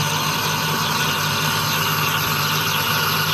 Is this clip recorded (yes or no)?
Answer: yes